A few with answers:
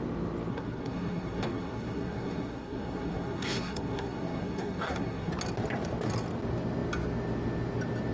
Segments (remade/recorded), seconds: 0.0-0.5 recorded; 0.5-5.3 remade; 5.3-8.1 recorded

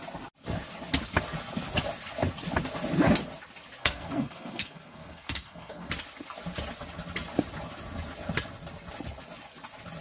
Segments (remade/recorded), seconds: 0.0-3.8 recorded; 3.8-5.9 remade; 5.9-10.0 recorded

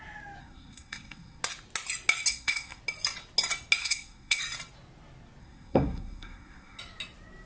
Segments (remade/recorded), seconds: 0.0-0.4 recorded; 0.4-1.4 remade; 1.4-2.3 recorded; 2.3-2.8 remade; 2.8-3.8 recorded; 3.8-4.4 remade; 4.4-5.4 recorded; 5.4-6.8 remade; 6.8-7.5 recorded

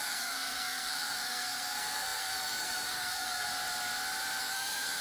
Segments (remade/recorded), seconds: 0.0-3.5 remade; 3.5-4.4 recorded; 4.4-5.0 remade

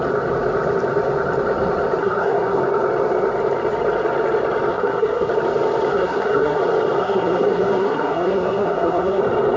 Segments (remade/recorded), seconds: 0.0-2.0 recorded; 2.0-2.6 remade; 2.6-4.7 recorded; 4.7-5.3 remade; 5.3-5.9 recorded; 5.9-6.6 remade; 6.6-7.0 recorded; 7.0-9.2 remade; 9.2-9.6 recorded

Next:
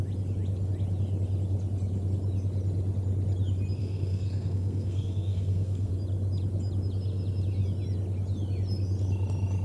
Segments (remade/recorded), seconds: 0.0-3.8 recorded; 3.8-5.9 remade; 5.9-9.6 recorded

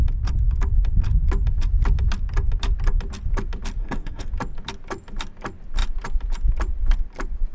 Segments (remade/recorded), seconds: 0.0-3.8 recorded; 3.8-4.3 remade; 4.3-7.5 recorded

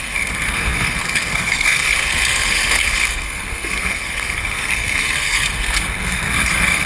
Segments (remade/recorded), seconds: 0.0-6.9 remade